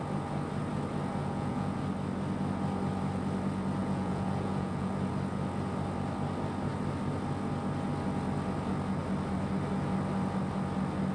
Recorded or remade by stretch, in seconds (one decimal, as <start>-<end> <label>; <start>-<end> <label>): 0.0-1.2 recorded; 1.2-1.8 remade; 1.8-3.8 recorded; 3.8-4.9 remade; 4.9-11.1 recorded